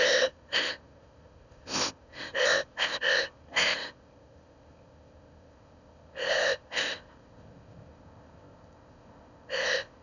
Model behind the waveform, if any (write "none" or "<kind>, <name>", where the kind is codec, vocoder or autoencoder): codec, ZipCodec